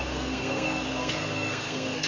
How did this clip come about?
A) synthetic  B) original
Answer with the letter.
A